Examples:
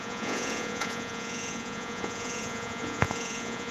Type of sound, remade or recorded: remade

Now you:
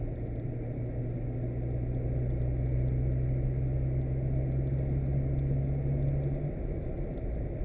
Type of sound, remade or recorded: recorded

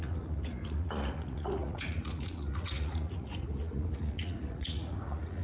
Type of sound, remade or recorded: remade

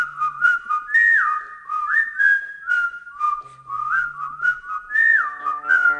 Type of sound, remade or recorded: recorded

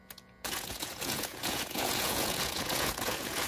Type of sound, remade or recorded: remade